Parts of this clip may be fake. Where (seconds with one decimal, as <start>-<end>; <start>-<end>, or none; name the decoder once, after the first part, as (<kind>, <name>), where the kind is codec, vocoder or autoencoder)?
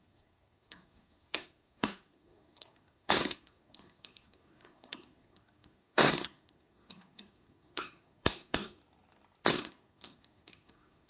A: 0.0-8.8 (codec, SNAC); 9.5-11.1